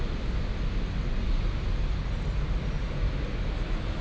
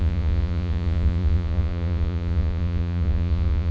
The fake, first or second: second